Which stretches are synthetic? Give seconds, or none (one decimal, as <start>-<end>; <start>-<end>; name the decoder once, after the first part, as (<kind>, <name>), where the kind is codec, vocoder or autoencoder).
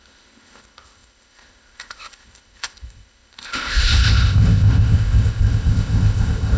0.0-6.6 (codec, ZipCodec)